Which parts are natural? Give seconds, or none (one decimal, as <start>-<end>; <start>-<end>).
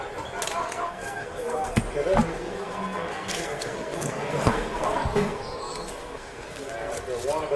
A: 0.0-0.6; 1.8-2.3; 6.9-7.6